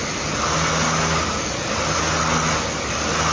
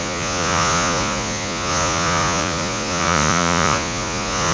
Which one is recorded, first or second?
first